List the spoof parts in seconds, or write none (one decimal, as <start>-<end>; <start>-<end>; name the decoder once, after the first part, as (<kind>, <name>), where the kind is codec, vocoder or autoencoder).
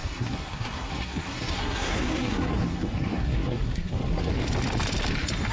0.0-4.3 (codec, SNAC)